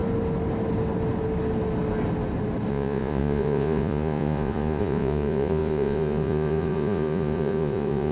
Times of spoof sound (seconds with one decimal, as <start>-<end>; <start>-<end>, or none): 2.7-8.1